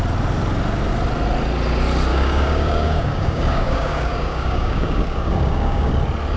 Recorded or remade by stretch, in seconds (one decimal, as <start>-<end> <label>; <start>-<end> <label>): 0.0-2.1 recorded; 2.1-5.9 remade; 5.9-6.4 recorded